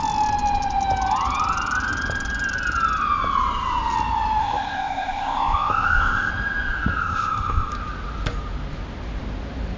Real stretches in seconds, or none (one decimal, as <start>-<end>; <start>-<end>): 0.0-4.4; 6.3-7.0; 7.7-9.8